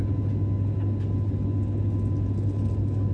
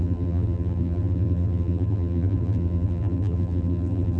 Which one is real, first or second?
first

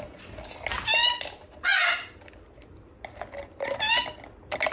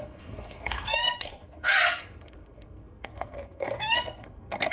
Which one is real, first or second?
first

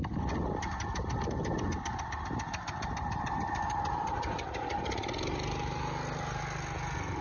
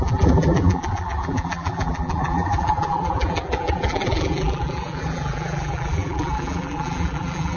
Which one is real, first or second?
first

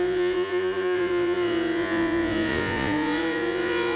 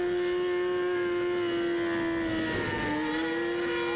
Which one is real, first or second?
second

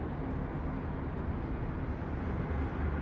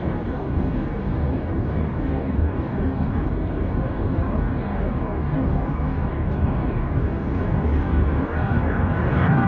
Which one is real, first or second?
first